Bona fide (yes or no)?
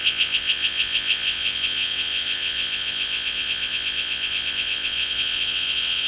no